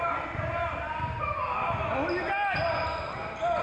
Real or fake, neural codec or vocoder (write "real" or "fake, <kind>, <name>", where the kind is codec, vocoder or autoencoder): real